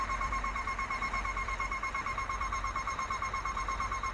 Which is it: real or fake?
fake